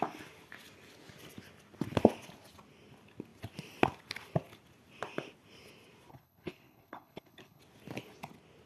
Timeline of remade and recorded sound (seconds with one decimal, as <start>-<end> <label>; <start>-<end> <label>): 0.0-6.1 recorded; 6.1-7.6 remade; 7.6-8.7 recorded